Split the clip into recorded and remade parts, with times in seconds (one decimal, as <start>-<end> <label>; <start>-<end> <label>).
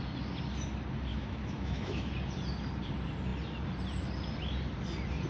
0.0-1.1 recorded; 1.1-2.1 remade; 2.1-5.3 recorded